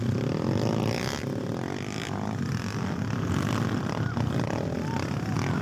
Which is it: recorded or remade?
recorded